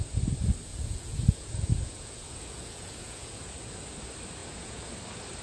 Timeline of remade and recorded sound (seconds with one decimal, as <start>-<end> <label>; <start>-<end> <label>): 0.0-0.7 recorded; 0.7-3.9 remade; 3.9-4.4 recorded; 4.4-4.9 remade; 4.9-5.4 recorded